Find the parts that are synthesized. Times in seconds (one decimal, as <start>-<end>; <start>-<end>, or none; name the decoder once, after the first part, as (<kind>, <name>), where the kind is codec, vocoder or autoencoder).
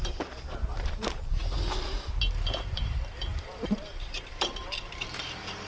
0.0-1.4 (vocoder, BigVGAN v2); 2.3-5.7